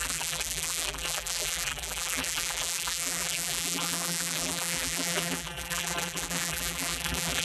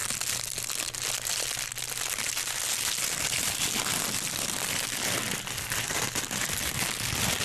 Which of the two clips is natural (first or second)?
second